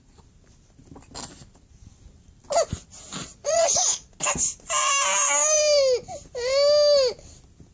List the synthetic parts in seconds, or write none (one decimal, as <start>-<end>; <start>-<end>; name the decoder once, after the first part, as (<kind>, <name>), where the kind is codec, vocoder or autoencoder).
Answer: 3.2-4.1 (vocoder, Vocos)